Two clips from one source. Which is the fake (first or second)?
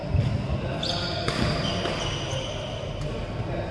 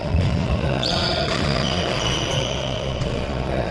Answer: second